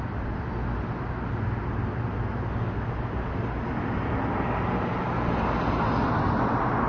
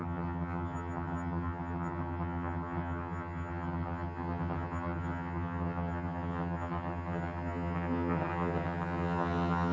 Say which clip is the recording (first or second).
first